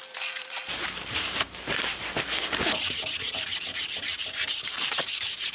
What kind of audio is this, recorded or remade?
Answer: remade